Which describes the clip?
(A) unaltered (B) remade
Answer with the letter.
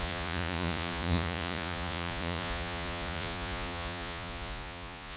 B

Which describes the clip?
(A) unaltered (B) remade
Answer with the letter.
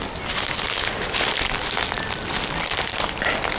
A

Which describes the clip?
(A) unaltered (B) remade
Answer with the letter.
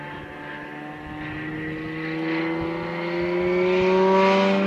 A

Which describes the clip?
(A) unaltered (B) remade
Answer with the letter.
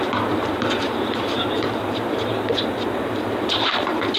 B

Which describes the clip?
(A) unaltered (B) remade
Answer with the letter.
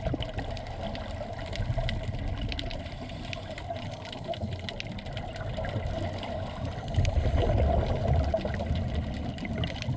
A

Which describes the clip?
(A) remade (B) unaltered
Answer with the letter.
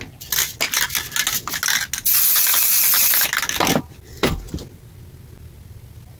B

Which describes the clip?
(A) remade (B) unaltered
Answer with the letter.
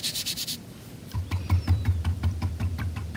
A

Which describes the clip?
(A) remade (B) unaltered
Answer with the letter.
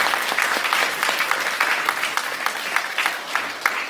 B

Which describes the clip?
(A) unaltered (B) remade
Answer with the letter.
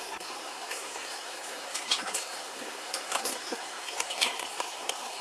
B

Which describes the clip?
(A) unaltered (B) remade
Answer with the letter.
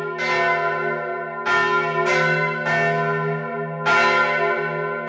A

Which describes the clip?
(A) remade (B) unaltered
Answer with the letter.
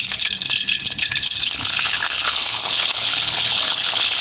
A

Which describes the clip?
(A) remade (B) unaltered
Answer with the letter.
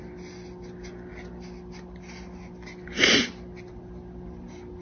B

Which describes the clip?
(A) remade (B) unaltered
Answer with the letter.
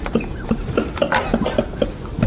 B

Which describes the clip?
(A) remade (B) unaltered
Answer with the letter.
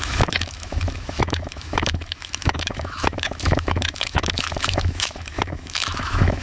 A